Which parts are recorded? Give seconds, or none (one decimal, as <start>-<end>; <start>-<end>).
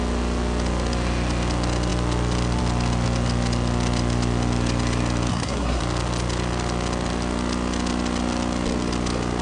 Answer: 0.0-5.3; 5.8-9.4